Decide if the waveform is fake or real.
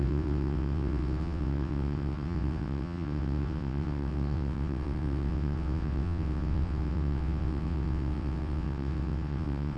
fake